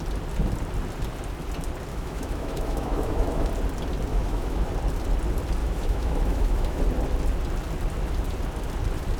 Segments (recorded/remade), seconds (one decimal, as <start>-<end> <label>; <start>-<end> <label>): 0.0-1.9 recorded; 1.9-3.5 remade; 3.5-4.1 recorded; 4.1-4.7 remade; 4.7-5.6 recorded; 5.6-6.8 remade; 6.8-9.2 recorded